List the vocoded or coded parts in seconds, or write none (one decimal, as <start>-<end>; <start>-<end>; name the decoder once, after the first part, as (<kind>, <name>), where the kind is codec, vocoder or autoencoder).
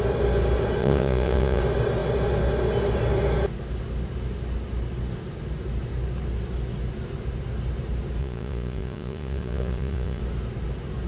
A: 0.8-1.6 (vocoder, Vocos); 8.2-10.2